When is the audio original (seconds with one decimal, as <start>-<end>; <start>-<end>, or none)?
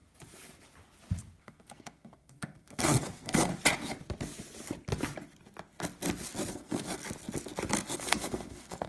0.0-1.4; 3.5-6.5; 7.0-7.9